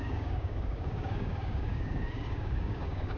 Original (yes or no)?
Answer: no